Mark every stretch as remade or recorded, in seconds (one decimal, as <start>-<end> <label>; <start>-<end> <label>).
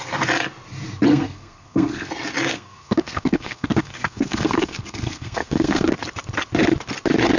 0.0-1.1 recorded; 1.1-2.1 remade; 2.1-2.5 recorded; 2.5-5.9 remade; 5.9-7.4 recorded